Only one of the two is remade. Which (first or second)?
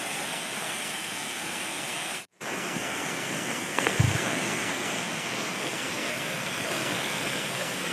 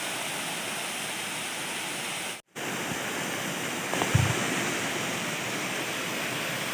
first